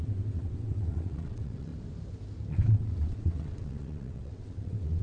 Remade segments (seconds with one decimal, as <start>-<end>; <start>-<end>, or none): 0.0-1.7; 2.5-5.0